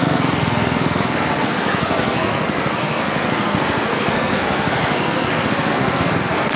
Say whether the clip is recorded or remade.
remade